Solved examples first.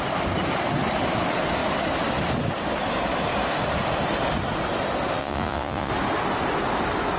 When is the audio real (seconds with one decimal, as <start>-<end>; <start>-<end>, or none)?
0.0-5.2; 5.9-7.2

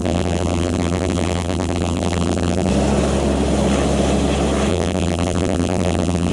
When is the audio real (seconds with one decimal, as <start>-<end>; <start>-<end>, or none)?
2.7-4.7

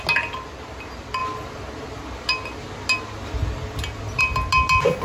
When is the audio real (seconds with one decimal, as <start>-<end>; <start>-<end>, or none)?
0.0-5.0